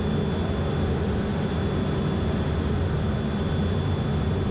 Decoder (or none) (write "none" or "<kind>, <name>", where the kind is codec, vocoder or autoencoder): none